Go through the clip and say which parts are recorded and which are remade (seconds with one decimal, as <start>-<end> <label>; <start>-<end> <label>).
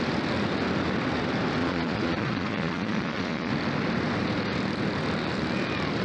0.0-1.6 recorded; 1.6-3.5 remade; 3.5-6.0 recorded